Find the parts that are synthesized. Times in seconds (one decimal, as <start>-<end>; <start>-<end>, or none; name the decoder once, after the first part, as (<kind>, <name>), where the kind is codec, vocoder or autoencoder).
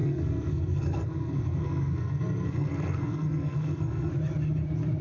0.0-4.1 (codec, SNAC)